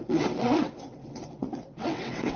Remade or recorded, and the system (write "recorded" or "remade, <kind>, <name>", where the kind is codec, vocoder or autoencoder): remade, vocoder, WaveNeXt